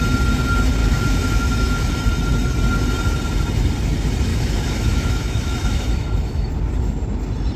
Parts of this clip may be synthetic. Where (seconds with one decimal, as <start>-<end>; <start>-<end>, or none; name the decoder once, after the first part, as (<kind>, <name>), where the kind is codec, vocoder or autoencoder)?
0.8-1.9 (autoencoder, DAC-VAE); 4.3-6.5